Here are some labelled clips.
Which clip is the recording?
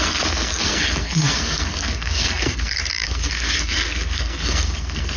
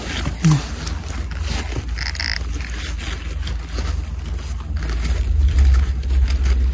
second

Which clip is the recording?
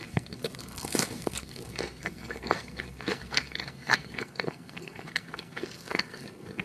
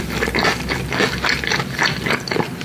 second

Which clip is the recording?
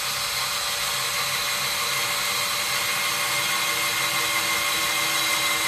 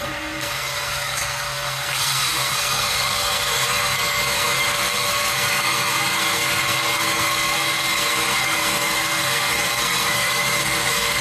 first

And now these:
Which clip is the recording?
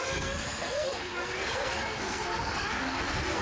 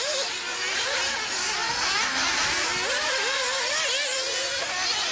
second